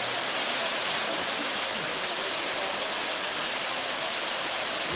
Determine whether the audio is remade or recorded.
recorded